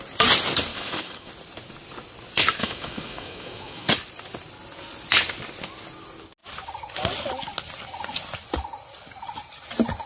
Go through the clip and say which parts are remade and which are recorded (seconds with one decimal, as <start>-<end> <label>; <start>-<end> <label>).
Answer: 0.0-0.7 recorded; 0.7-1.3 remade; 1.3-2.6 recorded; 2.6-3.9 remade; 3.9-10.1 recorded